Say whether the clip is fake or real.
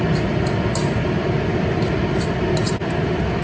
real